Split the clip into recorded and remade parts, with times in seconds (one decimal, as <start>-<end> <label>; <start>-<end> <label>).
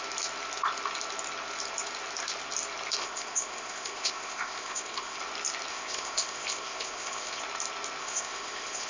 0.0-3.0 recorded; 3.0-5.2 remade; 5.2-5.7 recorded; 5.7-7.4 remade; 7.4-8.0 recorded; 8.0-8.9 remade